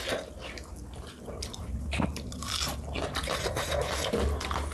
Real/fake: real